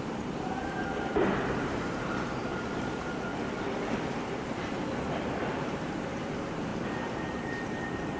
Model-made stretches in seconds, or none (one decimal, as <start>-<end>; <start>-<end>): 0.0-3.3; 5.1-8.2